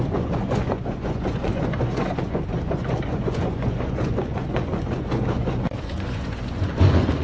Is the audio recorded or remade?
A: remade